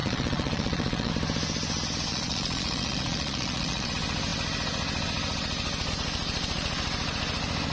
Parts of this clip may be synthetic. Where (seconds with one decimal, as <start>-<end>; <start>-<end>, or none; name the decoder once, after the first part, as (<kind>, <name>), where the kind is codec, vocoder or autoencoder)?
0.0-1.1 (vocoder, Vocos); 2.1-3.9